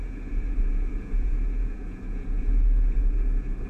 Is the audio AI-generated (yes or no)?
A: yes